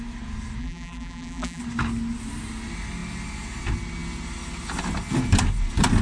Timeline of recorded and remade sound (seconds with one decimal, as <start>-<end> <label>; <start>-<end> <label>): 0.0-0.6 recorded; 0.6-1.6 remade; 1.6-6.0 recorded